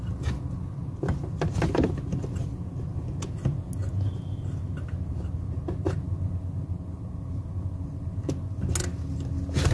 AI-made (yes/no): no